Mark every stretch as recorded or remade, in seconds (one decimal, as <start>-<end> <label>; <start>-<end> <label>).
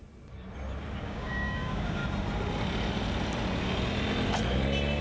0.0-1.0 recorded; 1.0-2.0 remade; 2.0-5.0 recorded